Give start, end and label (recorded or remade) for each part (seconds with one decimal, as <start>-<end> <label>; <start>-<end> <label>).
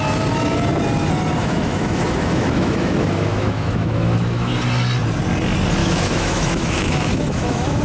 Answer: 0.0-1.4 recorded; 1.4-4.5 remade; 4.5-5.8 recorded; 5.8-7.8 remade